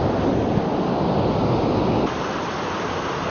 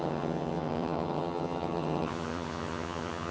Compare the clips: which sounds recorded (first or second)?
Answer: first